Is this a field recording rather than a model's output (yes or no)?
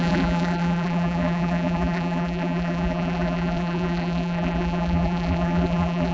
no